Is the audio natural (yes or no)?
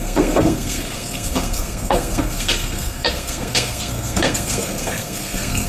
no